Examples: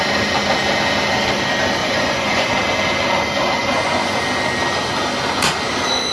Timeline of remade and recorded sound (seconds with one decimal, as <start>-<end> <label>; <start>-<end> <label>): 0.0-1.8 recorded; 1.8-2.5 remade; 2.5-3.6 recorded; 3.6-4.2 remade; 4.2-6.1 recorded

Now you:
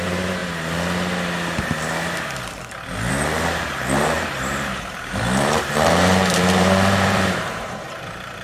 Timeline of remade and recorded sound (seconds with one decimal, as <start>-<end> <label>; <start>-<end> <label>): 0.0-0.4 remade; 0.4-3.1 recorded; 3.1-8.4 remade

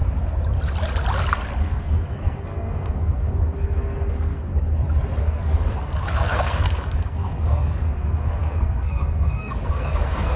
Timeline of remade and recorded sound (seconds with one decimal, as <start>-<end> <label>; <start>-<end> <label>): 0.0-1.6 recorded; 1.6-4.5 remade; 4.5-5.2 recorded; 5.2-10.4 remade

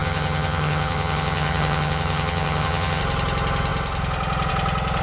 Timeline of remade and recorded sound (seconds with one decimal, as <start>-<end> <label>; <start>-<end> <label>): 0.0-3.0 remade; 3.0-5.0 recorded